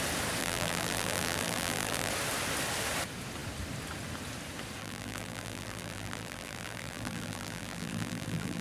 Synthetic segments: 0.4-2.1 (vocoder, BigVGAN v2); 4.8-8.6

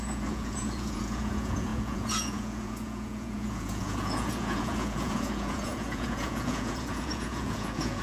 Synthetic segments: 0.0-8.0 (vocoder, Vocos)